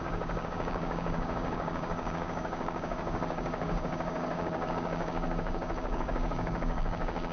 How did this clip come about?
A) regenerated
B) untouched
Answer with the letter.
A